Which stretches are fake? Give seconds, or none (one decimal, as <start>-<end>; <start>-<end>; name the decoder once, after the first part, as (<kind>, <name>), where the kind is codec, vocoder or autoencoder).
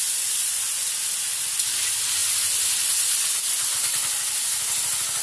none